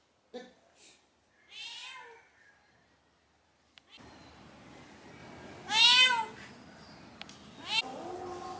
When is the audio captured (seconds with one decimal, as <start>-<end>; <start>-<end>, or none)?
0.0-8.6